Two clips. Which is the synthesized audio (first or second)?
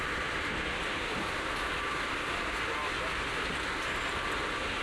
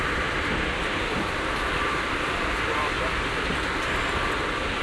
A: second